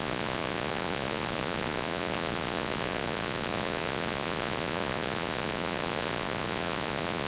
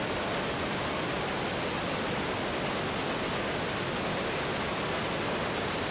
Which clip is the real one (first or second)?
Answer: second